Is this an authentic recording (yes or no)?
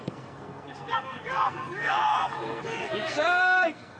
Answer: no